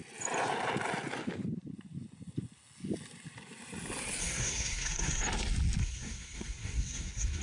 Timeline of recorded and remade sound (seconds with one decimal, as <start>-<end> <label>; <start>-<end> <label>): 0.0-4.2 recorded; 4.2-5.2 remade; 5.2-5.8 recorded; 5.8-7.4 remade